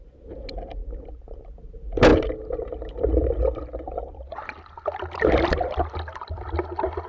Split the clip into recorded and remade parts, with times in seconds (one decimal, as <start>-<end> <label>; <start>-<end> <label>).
0.0-7.1 recorded